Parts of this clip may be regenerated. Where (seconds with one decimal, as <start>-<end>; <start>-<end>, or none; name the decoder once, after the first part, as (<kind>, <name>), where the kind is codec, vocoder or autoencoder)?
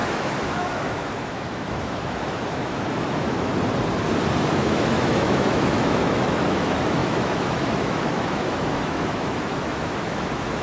0.0-3.5 (autoencoder, DAC-VAE); 4.5-10.6